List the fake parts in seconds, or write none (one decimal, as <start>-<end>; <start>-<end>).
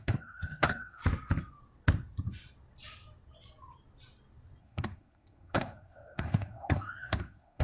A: 0.0-1.0; 4.6-7.6